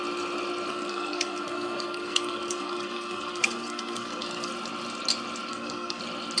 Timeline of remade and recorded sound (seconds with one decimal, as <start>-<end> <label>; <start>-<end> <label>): 0.0-0.7 recorded; 0.7-4.5 remade; 4.5-5.5 recorded; 5.5-6.0 remade; 6.0-6.4 recorded